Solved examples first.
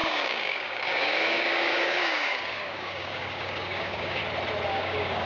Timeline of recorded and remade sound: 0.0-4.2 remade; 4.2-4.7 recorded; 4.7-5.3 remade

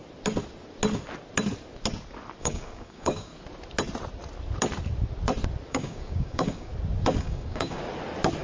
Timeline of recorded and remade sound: 0.0-2.4 recorded; 2.4-3.3 remade; 3.3-5.7 recorded; 5.7-6.7 remade; 6.7-7.2 recorded; 7.2-7.8 remade; 7.8-8.4 recorded

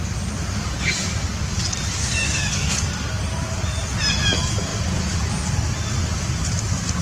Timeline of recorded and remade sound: 0.0-2.0 recorded; 2.0-2.9 remade; 2.9-7.0 recorded

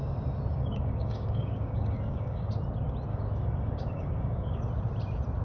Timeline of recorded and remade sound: 0.0-0.5 recorded; 0.5-2.5 remade; 2.5-3.1 recorded; 3.1-4.6 remade; 4.6-5.4 recorded

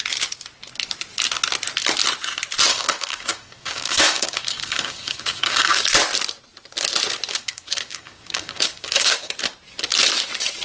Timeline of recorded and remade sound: 0.0-2.7 recorded; 2.7-5.8 remade; 5.8-7.3 recorded; 7.3-9.3 remade; 9.3-10.6 recorded

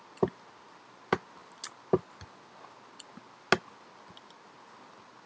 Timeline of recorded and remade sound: 0.0-5.3 recorded